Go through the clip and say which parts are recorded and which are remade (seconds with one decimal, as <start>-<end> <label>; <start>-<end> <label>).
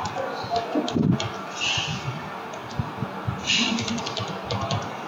0.0-5.1 recorded